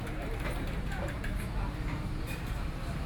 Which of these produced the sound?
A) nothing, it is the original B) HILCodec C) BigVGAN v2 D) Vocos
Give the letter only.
C